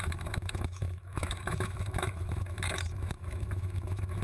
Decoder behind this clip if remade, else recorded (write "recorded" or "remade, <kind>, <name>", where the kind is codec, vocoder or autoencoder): remade, autoencoder, DAC-VAE